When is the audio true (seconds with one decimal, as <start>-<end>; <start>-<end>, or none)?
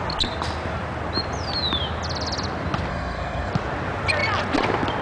0.0-2.9; 3.5-5.0